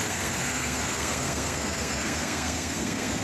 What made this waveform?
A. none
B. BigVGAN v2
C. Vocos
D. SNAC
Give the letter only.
D